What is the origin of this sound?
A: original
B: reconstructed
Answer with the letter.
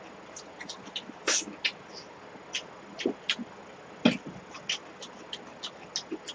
A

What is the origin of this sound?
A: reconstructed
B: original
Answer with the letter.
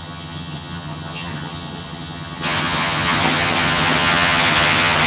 A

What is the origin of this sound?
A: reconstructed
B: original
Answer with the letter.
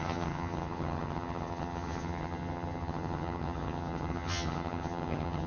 A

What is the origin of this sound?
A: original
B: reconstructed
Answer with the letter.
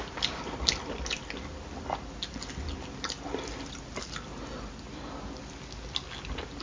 A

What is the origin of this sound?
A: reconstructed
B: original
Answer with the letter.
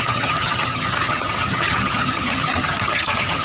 A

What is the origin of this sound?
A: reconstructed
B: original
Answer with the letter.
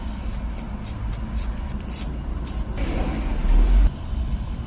B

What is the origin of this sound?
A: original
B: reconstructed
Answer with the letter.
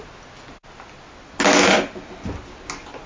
A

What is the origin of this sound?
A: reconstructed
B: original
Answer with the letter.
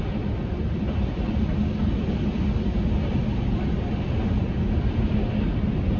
B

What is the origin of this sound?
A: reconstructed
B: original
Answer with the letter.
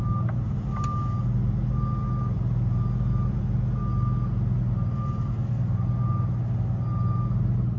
B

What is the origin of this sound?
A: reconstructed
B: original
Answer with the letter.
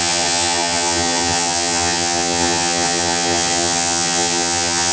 A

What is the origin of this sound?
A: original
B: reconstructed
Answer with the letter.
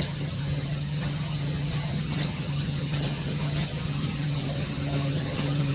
B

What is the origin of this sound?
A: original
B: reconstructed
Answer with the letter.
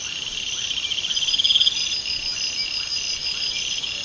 A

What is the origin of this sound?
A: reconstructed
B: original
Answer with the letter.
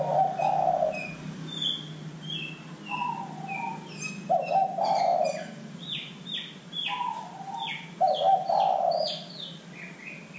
B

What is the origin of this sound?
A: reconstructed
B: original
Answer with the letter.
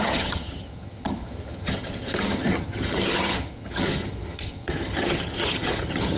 A